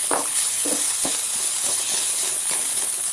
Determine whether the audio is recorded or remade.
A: remade